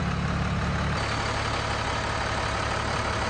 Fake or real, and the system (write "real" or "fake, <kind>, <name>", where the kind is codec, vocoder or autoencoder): real